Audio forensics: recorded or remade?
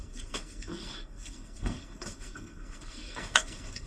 remade